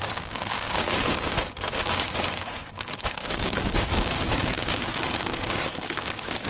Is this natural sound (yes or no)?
no